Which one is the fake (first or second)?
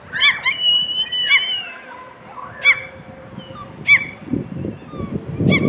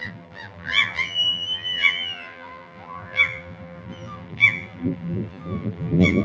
second